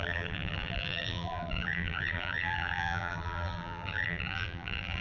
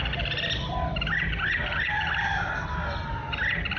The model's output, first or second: first